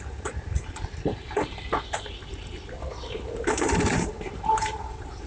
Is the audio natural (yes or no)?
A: no